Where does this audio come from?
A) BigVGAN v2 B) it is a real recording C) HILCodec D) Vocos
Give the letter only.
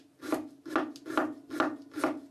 B